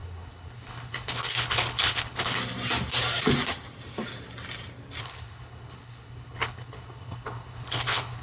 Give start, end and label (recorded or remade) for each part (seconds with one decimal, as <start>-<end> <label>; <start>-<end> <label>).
0.0-2.4 remade; 2.4-5.0 recorded; 5.0-8.2 remade